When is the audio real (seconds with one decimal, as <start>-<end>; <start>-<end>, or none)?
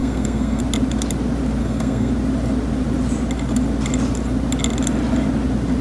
0.6-1.6; 2.1-5.8